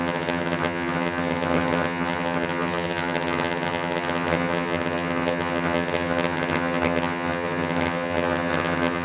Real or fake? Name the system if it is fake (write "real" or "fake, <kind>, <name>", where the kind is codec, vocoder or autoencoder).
fake, vocoder, HiFi-GAN